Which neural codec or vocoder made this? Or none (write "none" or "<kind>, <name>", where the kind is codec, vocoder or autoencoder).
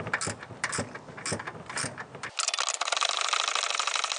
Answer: none